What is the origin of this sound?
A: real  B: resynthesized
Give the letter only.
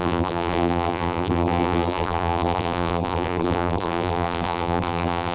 B